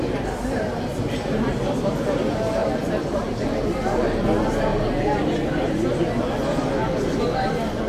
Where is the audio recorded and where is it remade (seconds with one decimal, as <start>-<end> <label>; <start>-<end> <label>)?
0.0-2.6 recorded; 2.6-3.6 remade; 3.6-7.9 recorded